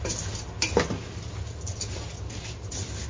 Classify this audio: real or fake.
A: real